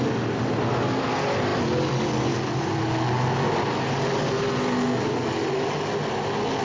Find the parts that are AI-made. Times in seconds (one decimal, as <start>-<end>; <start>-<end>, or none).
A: none